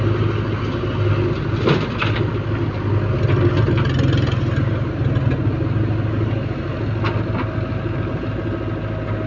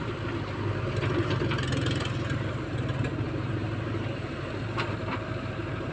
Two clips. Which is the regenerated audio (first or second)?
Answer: second